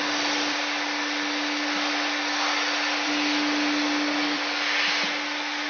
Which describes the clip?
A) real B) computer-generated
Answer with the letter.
A